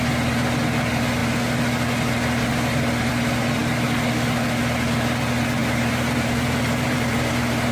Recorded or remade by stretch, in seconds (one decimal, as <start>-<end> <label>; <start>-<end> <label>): 0.0-5.6 recorded; 5.6-7.3 remade; 7.3-7.7 recorded